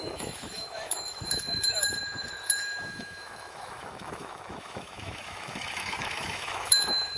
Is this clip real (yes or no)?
no